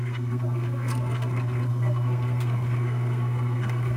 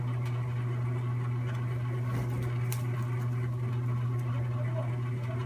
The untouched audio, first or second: second